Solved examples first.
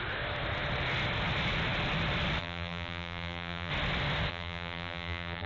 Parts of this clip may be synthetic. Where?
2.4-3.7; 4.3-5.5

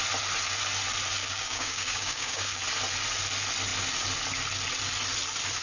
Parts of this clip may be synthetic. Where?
1.2-2.6